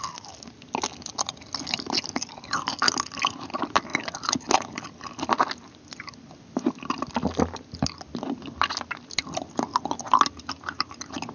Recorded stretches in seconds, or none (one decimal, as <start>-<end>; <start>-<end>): 0.0-11.3